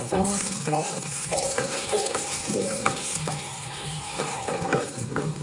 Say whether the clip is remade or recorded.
remade